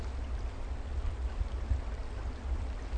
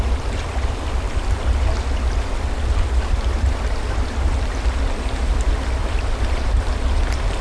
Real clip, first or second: first